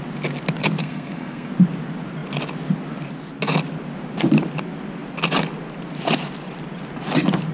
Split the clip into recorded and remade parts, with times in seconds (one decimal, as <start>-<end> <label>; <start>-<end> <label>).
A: 0.0-0.8 recorded; 0.8-1.5 remade; 1.5-7.5 recorded